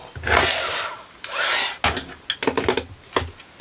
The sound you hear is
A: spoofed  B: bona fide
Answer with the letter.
B